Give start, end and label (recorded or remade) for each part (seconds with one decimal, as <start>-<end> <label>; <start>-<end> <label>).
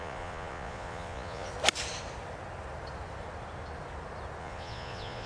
0.0-1.5 remade; 1.5-4.4 recorded; 4.4-5.3 remade